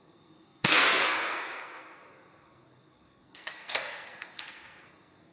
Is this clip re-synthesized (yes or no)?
yes